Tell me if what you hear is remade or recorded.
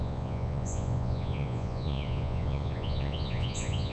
remade